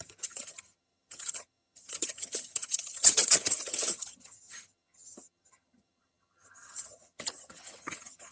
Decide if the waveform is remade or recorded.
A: remade